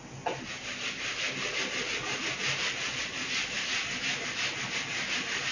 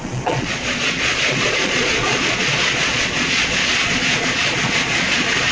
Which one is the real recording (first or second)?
first